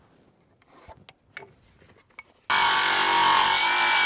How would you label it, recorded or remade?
recorded